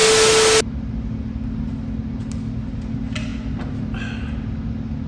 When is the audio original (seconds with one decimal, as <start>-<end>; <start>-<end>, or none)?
0.0-5.1